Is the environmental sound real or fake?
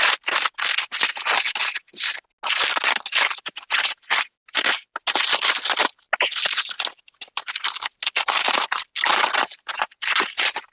real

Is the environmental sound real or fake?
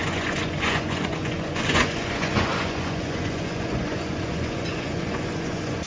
fake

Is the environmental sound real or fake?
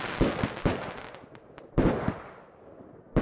real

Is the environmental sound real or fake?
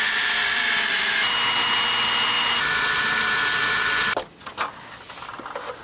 real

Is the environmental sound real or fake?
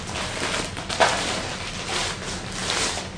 real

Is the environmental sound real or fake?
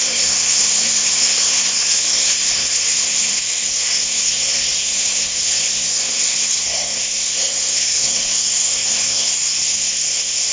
fake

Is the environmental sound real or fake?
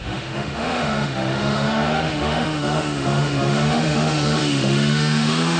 fake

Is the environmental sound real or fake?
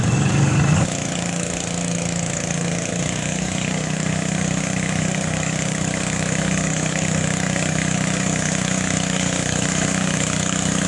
fake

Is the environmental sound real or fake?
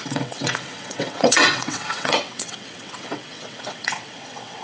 fake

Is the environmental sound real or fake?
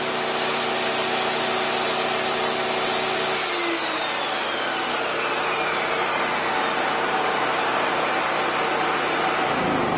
real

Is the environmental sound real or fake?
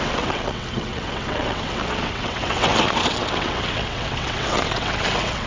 fake